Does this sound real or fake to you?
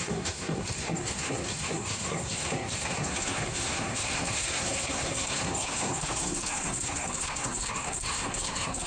fake